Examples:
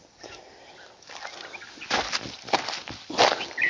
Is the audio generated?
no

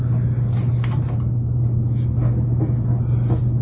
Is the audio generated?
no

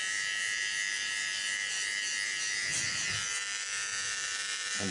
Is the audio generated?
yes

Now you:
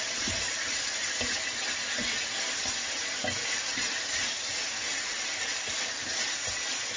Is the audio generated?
no